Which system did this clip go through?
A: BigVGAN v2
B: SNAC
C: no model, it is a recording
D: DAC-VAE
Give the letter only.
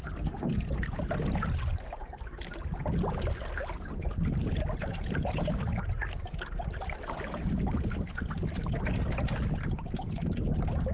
C